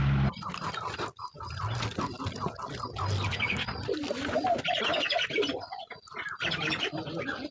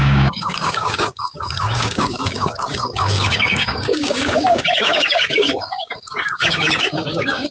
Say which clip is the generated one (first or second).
second